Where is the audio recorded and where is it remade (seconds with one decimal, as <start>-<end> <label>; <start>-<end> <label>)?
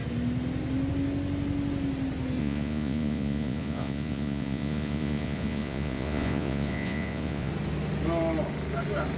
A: 0.0-2.4 recorded; 2.4-7.5 remade; 7.5-9.2 recorded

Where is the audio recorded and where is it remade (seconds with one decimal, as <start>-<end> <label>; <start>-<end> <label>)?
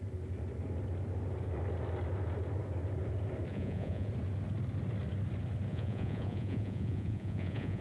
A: 0.0-3.5 recorded; 3.5-4.1 remade; 4.1-5.7 recorded; 5.7-7.8 remade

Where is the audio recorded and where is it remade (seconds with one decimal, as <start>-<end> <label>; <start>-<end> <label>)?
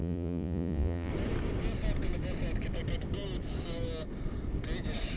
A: 0.0-1.1 remade; 1.1-5.2 recorded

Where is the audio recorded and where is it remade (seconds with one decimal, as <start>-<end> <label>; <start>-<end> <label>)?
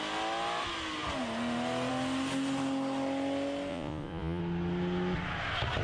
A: 0.0-3.7 recorded; 3.7-4.4 remade; 4.4-5.8 recorded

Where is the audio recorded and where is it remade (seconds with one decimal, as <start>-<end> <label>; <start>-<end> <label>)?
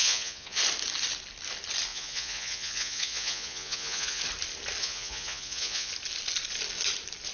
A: 0.0-0.6 remade; 0.6-1.9 recorded; 1.9-4.2 remade; 4.2-4.8 recorded; 4.8-5.9 remade; 5.9-7.3 recorded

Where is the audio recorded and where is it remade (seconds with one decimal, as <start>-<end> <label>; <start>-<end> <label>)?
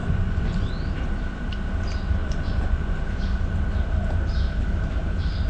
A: 0.0-0.7 remade; 0.7-2.2 recorded; 2.2-3.0 remade; 3.0-5.5 recorded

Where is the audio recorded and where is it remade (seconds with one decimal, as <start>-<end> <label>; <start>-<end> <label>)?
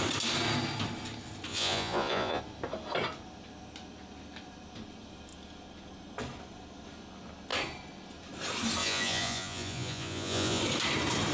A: 0.0-1.5 recorded; 1.5-2.4 remade; 2.4-8.8 recorded; 8.8-10.6 remade; 10.6-11.3 recorded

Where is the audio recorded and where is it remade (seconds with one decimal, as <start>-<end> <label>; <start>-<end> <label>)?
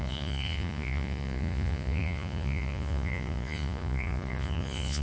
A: 0.0-5.0 remade